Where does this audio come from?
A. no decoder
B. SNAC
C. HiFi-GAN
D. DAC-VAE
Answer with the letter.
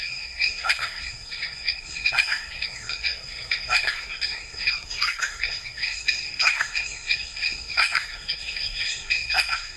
B